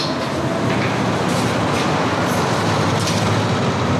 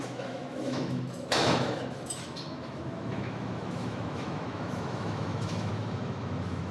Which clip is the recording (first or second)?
first